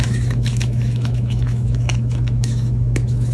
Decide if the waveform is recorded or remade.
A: remade